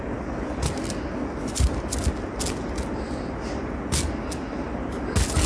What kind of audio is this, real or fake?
real